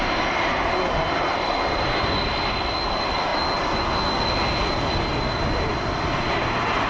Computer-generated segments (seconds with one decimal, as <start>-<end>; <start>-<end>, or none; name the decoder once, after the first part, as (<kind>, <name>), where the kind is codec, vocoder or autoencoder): none